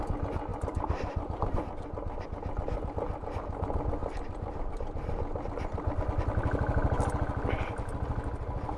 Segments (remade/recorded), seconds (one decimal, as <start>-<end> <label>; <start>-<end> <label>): 0.0-0.5 recorded; 0.5-1.5 remade; 1.5-8.8 recorded

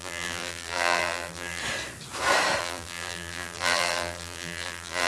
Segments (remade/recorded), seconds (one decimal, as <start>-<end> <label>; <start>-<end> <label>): 0.0-1.6 remade; 1.6-2.6 recorded; 2.6-5.1 remade

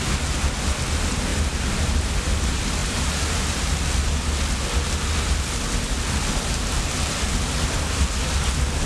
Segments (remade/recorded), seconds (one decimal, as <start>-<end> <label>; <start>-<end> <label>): 0.0-1.3 recorded; 1.3-2.1 remade; 2.1-2.8 recorded; 2.8-3.6 remade; 3.6-8.9 recorded